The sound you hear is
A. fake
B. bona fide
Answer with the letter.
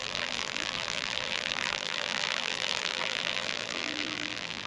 A